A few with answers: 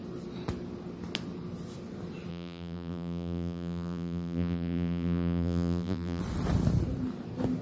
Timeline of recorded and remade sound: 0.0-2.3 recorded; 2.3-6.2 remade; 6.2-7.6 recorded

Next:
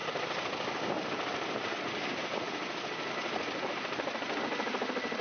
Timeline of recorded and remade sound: 0.0-5.2 recorded

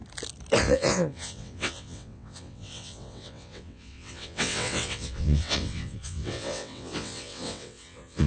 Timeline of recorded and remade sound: 0.0-0.6 recorded; 0.6-8.3 remade

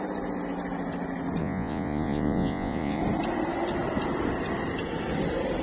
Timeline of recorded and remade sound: 0.0-1.4 recorded; 1.4-3.0 remade; 3.0-5.6 recorded

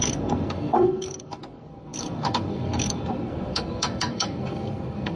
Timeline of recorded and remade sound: 0.0-5.2 remade

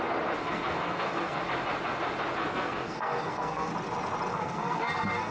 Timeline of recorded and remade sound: 0.0-0.4 recorded; 0.4-1.4 remade; 1.4-2.4 recorded; 2.4-3.7 remade; 3.7-4.3 recorded; 4.3-5.3 remade

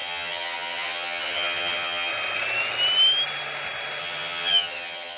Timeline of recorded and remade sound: 0.0-2.1 remade; 2.1-4.0 recorded; 4.0-5.2 remade

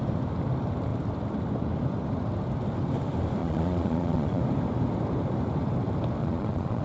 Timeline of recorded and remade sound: 0.0-3.4 recorded; 3.4-4.4 remade; 4.4-6.2 recorded; 6.2-6.8 remade